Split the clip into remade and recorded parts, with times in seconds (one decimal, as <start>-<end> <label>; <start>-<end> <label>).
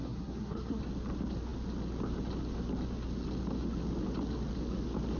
0.0-0.8 remade; 0.8-5.2 recorded